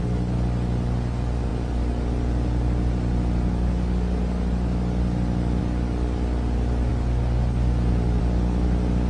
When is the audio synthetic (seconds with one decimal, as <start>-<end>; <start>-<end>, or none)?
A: none